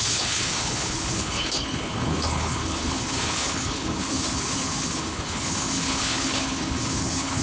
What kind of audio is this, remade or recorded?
remade